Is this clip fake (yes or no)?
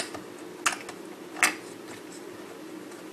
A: no